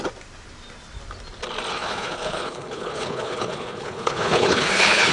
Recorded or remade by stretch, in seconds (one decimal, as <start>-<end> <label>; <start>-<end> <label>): 0.0-1.7 recorded; 1.7-5.1 remade

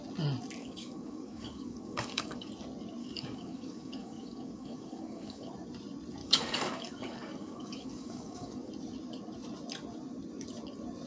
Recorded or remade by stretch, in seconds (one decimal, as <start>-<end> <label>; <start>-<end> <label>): 0.0-0.6 recorded; 0.6-2.5 remade; 2.5-3.0 recorded; 3.0-5.5 remade; 5.5-6.2 recorded; 6.2-8.7 remade; 8.7-11.1 recorded

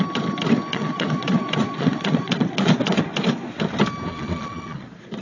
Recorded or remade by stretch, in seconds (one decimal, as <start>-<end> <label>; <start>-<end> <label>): 0.0-0.7 recorded; 0.7-3.0 remade; 3.0-4.1 recorded; 4.1-5.2 remade

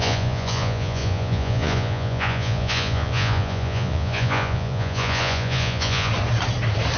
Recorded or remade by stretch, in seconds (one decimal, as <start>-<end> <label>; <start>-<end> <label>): 0.0-6.1 remade; 6.1-7.0 recorded

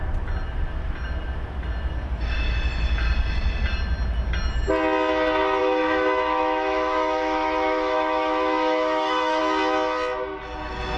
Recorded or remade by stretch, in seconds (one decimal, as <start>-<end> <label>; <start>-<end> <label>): 0.0-5.6 recorded; 5.6-9.4 remade; 9.4-11.0 recorded

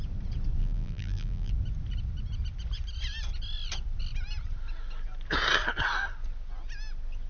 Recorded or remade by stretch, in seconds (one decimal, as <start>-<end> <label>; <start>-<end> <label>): 0.0-0.6 recorded; 0.6-1.5 remade; 1.5-7.3 recorded

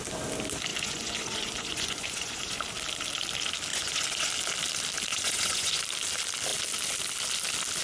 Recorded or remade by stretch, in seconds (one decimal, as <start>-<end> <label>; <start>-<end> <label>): 0.0-0.7 recorded; 0.7-2.6 remade; 2.6-3.7 recorded; 3.7-4.3 remade; 4.3-5.1 recorded; 5.1-5.8 remade; 5.8-7.8 recorded